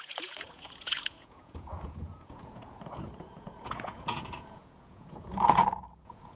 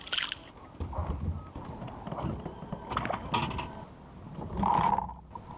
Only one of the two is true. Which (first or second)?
second